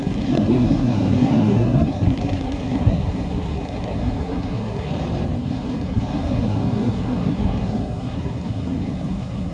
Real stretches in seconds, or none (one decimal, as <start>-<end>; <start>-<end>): 4.9-5.4